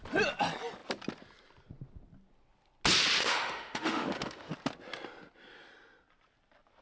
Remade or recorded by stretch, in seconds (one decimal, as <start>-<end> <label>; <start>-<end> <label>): 0.0-3.2 recorded; 3.2-4.5 remade; 4.5-6.8 recorded